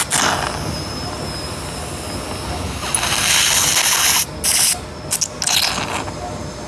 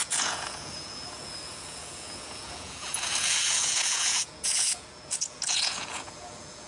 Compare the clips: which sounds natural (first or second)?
first